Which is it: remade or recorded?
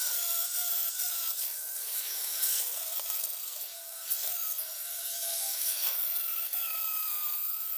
remade